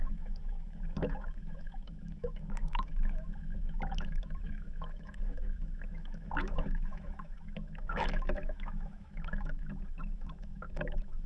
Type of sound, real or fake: fake